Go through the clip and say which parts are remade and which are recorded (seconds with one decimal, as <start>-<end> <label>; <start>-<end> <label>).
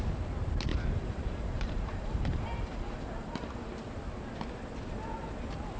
0.0-0.7 recorded; 0.7-3.7 remade; 3.7-5.8 recorded